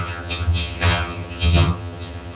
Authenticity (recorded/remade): remade